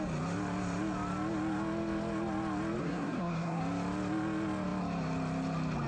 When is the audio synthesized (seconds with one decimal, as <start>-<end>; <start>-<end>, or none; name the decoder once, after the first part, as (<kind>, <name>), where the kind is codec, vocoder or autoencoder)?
2.8-3.6 (codec, SNAC)

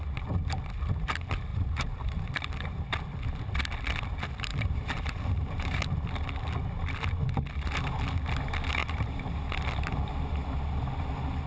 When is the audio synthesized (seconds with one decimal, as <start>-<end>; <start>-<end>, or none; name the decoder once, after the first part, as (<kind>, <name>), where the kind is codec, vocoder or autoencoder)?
1.5-2.1 (vocoder, BigVGAN v2); 4.5-5.8; 8.8-9.4